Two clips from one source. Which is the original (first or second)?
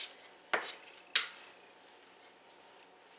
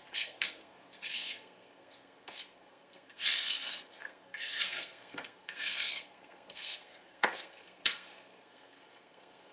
first